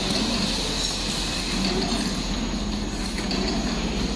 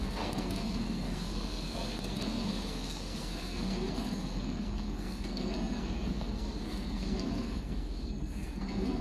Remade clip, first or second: second